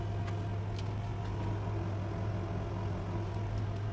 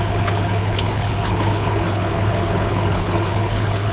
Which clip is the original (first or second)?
first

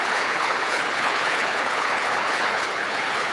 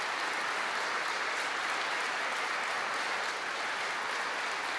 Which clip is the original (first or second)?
second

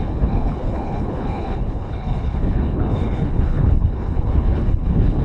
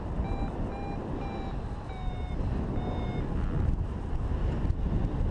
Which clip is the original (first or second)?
second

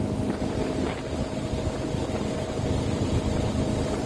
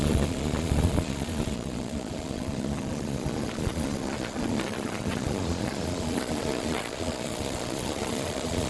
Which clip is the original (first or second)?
first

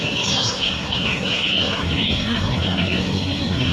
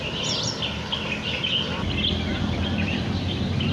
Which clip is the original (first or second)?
second